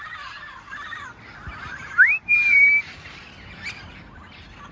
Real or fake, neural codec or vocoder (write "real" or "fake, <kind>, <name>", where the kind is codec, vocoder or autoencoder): fake, vocoder, BigVGAN v2